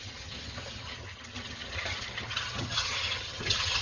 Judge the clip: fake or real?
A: fake